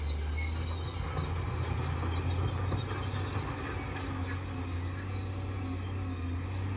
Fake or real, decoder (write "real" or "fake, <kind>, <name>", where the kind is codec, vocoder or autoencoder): real